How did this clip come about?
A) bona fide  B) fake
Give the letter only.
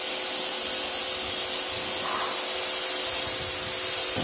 A